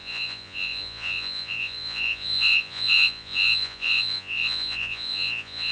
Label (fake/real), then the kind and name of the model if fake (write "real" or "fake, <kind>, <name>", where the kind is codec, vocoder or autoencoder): fake, vocoder, Vocos